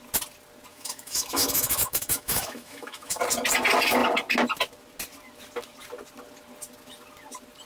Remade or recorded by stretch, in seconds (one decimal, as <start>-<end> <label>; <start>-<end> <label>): 0.0-0.7 recorded; 0.7-3.2 remade; 3.2-7.7 recorded